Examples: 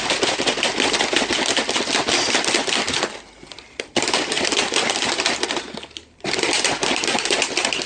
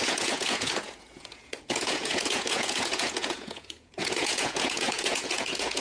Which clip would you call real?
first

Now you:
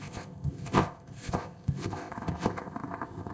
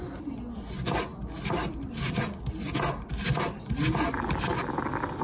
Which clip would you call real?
second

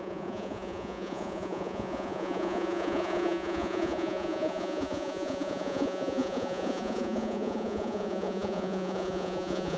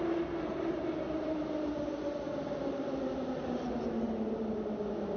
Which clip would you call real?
second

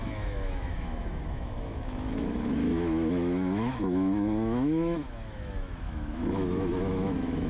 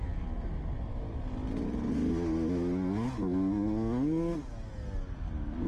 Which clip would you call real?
second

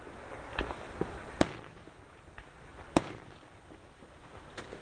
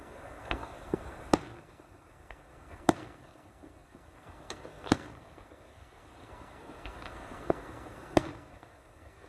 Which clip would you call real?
first